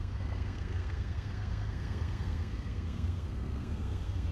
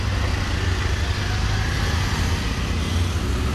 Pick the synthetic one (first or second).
first